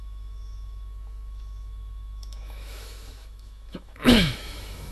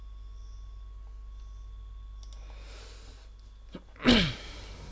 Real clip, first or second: second